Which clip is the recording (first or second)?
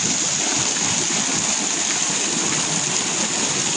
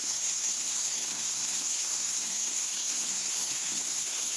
first